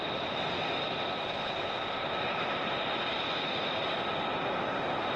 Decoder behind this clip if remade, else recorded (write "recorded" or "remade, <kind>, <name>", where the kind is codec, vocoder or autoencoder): recorded